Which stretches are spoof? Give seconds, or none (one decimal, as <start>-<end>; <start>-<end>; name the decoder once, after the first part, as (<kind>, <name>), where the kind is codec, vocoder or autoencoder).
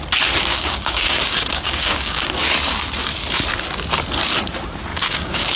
0.5-2.3 (codec, DAC); 4.9-5.6